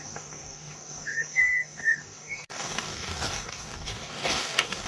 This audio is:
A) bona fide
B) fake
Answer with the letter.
B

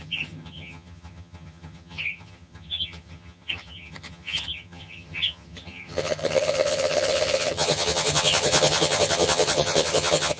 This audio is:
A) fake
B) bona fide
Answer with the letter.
A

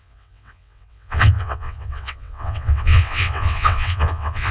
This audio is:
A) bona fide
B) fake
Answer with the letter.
B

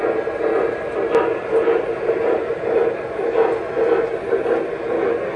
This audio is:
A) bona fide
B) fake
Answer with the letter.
A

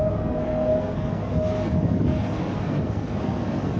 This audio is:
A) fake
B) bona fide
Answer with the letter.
A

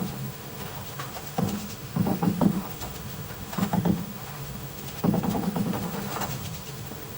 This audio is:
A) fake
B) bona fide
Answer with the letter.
A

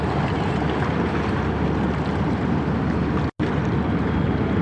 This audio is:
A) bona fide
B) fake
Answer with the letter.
A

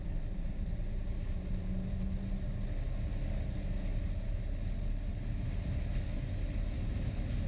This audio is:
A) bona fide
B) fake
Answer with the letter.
A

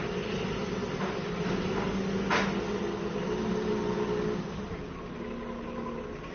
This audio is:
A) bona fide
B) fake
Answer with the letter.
A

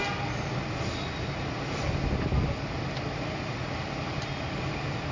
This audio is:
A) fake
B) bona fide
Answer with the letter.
B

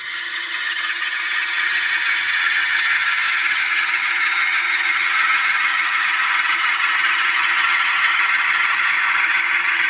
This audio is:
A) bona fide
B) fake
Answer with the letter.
B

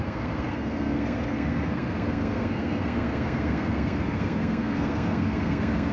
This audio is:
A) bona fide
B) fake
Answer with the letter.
B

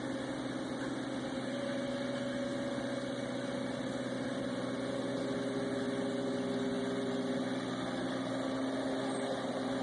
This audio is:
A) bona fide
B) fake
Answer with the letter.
A